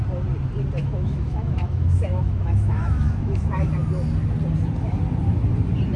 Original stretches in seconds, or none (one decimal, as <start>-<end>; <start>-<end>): 0.0-0.8; 3.7-6.0

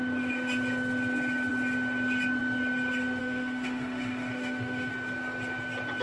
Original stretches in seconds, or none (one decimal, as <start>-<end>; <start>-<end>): 0.0-3.2; 4.9-6.0

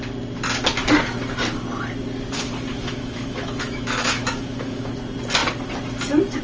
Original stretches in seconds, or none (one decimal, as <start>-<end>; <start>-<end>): 0.0-2.7; 4.9-6.4

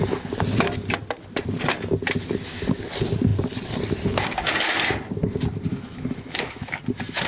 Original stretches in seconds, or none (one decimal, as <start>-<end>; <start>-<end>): 0.0-5.7; 6.8-7.3

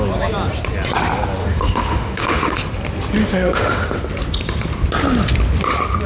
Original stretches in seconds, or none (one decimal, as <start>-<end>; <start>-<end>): 0.0-1.4; 2.5-3.2; 4.0-6.1

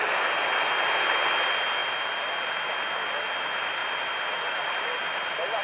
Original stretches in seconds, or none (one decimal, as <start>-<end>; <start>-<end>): 0.0-5.6